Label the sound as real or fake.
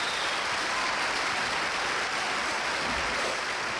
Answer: real